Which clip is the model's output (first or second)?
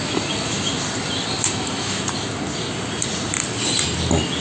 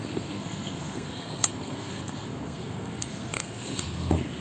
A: second